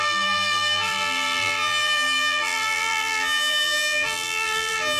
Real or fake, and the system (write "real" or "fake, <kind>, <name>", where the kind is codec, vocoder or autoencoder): fake, vocoder, BigVGAN v2